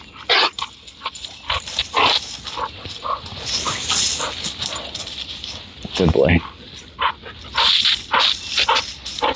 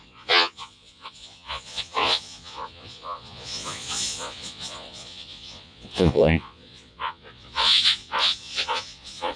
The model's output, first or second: second